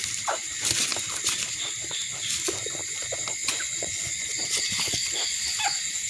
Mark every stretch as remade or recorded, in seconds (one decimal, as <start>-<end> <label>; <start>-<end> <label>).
0.0-3.4 recorded; 3.4-4.4 remade; 4.4-6.1 recorded